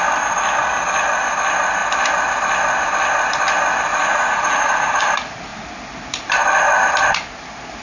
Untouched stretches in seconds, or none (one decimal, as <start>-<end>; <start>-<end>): 0.0-3.9; 5.0-7.8